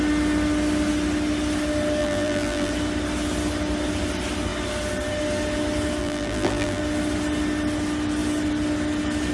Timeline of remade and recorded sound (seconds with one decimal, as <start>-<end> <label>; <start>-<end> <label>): 0.0-2.0 recorded; 2.0-2.7 remade; 2.7-6.0 recorded; 6.0-6.8 remade; 6.8-9.3 recorded